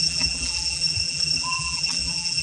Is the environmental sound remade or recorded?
remade